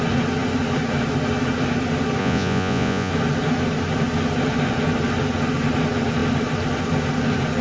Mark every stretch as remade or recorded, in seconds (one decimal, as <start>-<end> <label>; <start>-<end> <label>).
0.0-2.2 recorded; 2.2-3.1 remade; 3.1-7.6 recorded